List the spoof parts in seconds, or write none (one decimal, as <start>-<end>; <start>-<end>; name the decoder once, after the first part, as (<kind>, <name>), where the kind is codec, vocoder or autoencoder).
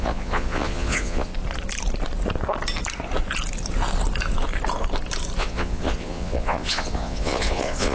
0.0-1.3 (vocoder, Vocos); 5.4-7.9